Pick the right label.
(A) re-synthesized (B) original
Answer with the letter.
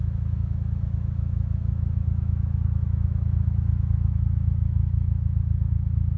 A